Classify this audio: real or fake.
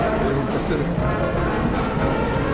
real